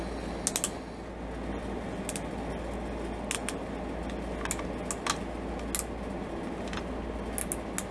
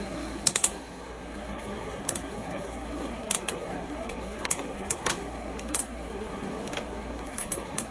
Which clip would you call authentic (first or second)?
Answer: first